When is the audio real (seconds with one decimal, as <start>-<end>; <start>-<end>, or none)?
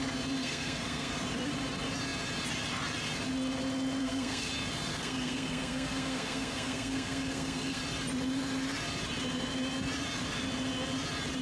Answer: 0.0-0.4; 1.1-4.0; 4.5-4.9; 7.8-11.4